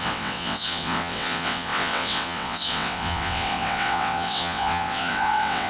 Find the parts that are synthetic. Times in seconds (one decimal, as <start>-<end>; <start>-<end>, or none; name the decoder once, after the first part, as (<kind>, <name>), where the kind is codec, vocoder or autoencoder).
0.0-5.7 (vocoder, WaveNeXt)